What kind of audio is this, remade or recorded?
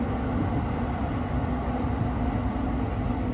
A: recorded